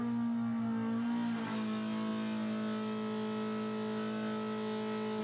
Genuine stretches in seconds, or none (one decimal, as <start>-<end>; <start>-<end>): 0.0-5.2